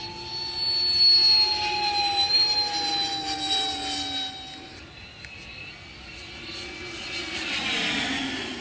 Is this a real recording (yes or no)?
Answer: yes